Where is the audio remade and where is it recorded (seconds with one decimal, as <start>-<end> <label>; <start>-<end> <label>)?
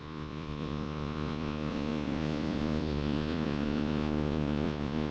0.0-5.1 remade